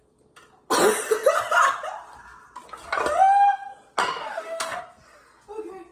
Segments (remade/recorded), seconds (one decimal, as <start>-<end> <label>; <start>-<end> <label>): 0.0-4.0 recorded; 4.0-4.8 remade; 4.8-5.9 recorded